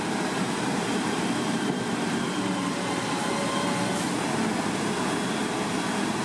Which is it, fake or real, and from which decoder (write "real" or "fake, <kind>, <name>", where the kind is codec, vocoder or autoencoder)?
fake, vocoder, BigVGAN v2